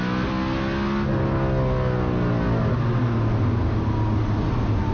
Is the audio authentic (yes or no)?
yes